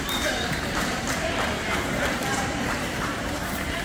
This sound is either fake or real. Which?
fake